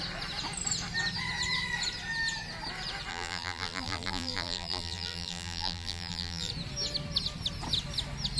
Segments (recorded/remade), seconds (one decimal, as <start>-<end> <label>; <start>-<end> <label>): 0.0-3.1 recorded; 3.1-6.5 remade; 6.5-8.4 recorded